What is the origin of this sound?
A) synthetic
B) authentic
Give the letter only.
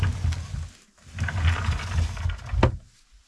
B